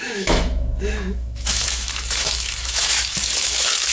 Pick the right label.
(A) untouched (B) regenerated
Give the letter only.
B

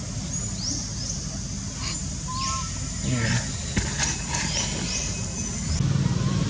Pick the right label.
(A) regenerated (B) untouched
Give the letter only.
B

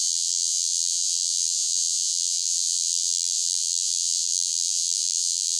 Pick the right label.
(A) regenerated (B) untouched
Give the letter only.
A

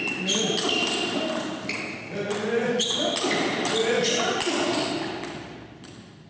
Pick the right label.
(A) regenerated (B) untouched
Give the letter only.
B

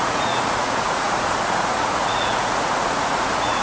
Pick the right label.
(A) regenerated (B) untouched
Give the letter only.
A